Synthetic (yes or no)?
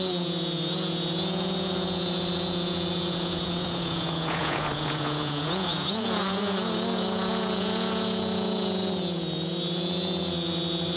yes